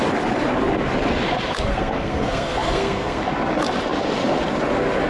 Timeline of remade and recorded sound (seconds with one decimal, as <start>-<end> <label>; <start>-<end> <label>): 0.0-1.5 recorded; 1.5-3.2 remade; 3.2-5.1 recorded

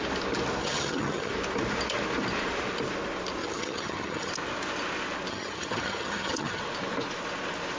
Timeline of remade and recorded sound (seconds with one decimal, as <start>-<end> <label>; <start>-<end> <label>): 0.0-0.6 recorded; 0.6-1.3 remade; 1.3-3.4 recorded; 3.4-4.3 remade; 4.3-5.3 recorded; 5.3-6.6 remade; 6.6-7.8 recorded